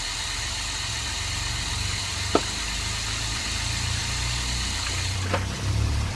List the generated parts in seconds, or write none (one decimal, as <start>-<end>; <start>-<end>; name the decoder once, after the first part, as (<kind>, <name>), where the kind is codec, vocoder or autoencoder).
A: 0.0-6.1 (vocoder, BigVGAN v2)